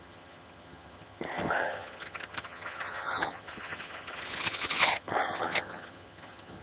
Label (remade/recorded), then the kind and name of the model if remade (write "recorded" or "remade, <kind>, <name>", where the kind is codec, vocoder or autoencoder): remade, vocoder, HiFi-GAN